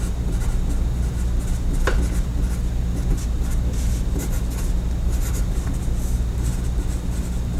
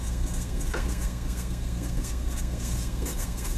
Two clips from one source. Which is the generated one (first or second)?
second